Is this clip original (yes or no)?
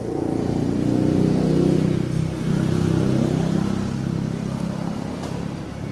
yes